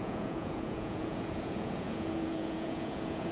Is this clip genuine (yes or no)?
no